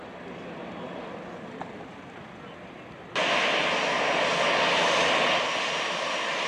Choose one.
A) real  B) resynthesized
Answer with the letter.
A